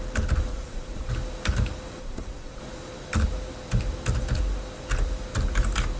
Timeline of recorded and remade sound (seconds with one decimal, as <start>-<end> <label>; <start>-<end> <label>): 0.0-0.5 recorded; 0.5-1.1 remade; 1.1-2.0 recorded; 2.0-2.6 remade; 2.6-6.0 recorded